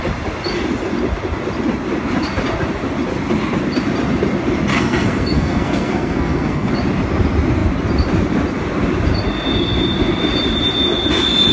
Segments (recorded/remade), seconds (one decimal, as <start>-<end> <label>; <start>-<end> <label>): 0.0-4.7 recorded; 4.7-6.7 remade; 6.7-11.5 recorded